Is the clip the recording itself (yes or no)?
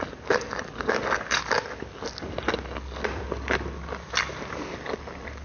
yes